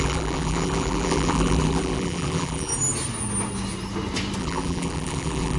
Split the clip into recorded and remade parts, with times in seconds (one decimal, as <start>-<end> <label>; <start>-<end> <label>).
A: 0.0-2.7 remade; 2.7-4.4 recorded; 4.4-5.6 remade